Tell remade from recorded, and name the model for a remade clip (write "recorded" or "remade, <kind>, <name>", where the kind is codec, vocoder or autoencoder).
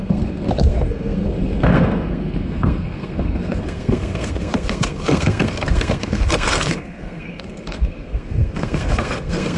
remade, codec, SNAC